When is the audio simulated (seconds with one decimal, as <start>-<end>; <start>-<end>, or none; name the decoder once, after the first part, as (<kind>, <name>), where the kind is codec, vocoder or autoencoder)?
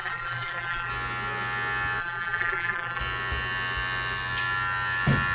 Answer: 0.0-0.9 (vocoder, BigVGAN v2); 2.0-3.0